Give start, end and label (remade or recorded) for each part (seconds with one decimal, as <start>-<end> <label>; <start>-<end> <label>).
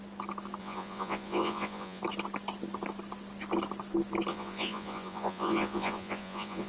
0.0-0.6 recorded; 0.6-2.0 remade; 2.0-4.3 recorded; 4.3-6.7 remade